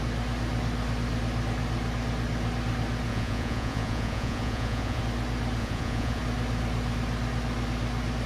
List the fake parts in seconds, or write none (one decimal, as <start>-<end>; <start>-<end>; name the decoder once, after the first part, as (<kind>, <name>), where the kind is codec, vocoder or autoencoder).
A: 3.1-5.0 (vocoder, Vocos); 5.6-6.2